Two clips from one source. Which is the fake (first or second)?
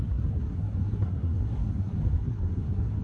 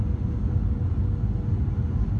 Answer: first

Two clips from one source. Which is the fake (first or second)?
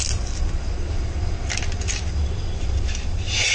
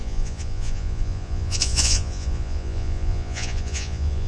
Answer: second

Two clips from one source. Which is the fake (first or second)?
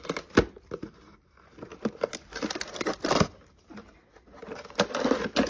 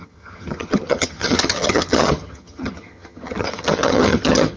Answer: second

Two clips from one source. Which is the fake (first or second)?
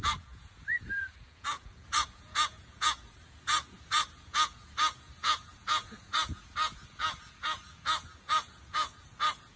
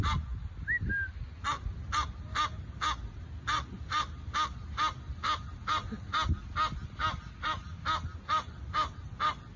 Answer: first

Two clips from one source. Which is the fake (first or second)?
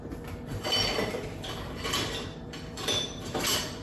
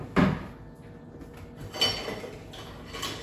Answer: first